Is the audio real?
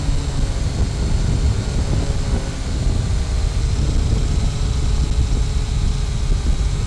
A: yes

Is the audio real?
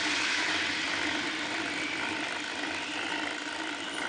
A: yes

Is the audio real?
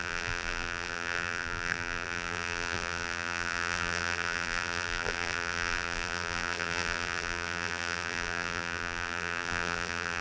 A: no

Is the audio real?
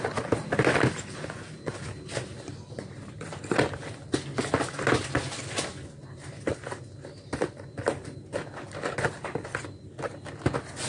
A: yes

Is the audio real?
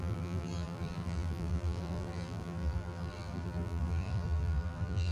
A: no